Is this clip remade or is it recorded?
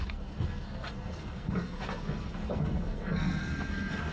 remade